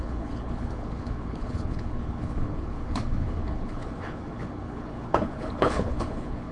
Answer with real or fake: fake